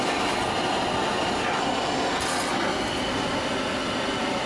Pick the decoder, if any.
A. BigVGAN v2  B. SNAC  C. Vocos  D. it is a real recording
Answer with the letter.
D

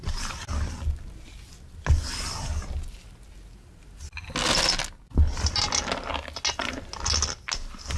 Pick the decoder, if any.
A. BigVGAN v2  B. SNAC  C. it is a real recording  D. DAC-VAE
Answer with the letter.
C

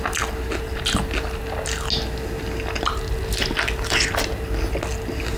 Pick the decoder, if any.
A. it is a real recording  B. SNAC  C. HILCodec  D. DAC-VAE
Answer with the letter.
A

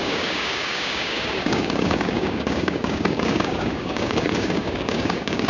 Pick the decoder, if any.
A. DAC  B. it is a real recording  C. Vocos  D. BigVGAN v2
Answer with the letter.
A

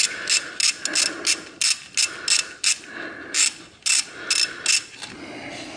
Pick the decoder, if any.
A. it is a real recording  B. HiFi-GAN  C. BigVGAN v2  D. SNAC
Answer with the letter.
A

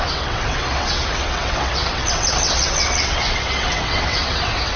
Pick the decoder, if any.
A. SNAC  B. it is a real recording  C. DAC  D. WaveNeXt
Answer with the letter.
D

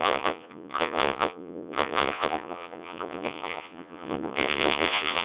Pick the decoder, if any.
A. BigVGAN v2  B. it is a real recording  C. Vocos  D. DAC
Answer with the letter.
C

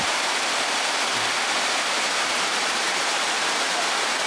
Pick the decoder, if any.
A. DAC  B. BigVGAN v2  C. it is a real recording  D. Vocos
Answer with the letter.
B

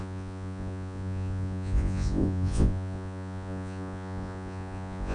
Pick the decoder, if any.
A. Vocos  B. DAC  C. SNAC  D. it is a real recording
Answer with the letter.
A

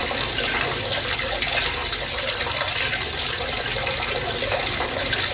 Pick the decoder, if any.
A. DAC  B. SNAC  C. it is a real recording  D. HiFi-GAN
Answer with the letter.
C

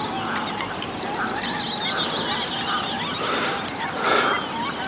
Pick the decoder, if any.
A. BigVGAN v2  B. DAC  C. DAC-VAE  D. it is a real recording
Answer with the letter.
D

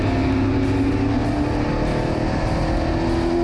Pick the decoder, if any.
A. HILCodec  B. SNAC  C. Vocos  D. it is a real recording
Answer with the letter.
D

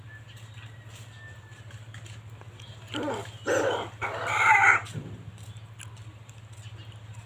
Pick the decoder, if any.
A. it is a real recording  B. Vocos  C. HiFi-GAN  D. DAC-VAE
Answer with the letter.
A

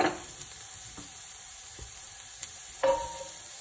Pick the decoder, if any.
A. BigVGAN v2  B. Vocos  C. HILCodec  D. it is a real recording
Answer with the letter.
D